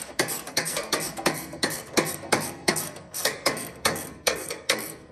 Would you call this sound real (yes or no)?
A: no